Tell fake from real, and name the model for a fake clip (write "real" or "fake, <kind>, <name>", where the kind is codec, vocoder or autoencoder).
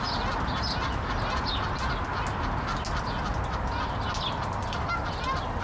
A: real